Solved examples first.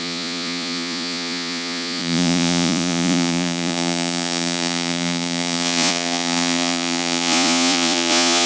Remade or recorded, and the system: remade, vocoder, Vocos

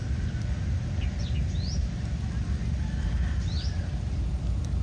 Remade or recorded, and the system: recorded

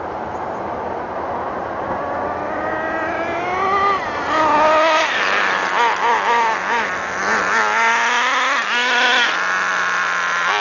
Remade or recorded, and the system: recorded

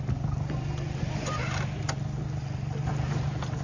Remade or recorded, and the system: recorded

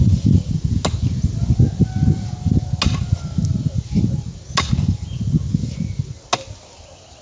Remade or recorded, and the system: recorded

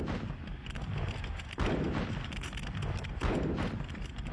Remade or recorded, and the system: recorded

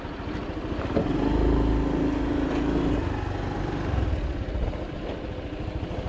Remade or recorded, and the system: recorded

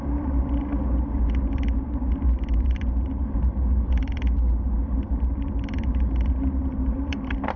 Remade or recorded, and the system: remade, vocoder, BigVGAN v2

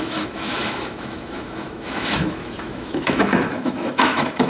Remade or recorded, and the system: remade, autoencoder, DAC-VAE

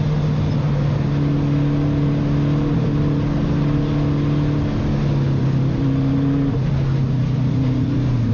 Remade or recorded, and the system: recorded